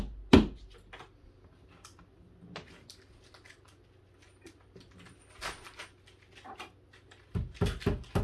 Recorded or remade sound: recorded